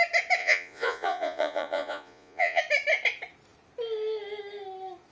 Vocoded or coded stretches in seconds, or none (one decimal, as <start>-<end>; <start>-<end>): 0.4-2.6